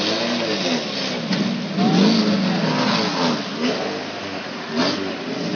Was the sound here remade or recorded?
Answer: recorded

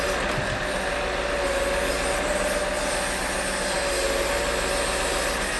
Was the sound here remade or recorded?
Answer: recorded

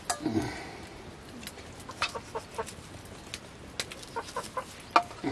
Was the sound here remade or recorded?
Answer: recorded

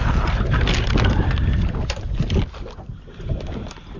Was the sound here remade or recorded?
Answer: recorded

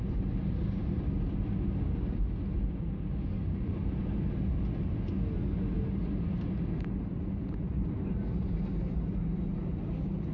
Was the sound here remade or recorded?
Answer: recorded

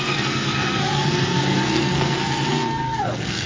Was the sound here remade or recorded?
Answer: remade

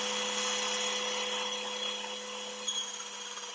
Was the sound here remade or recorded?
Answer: recorded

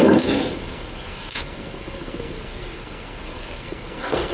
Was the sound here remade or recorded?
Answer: remade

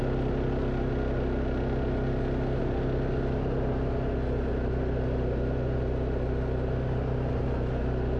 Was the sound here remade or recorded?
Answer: recorded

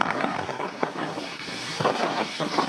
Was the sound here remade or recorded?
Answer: remade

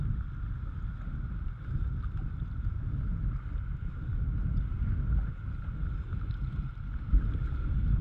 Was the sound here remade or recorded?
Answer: recorded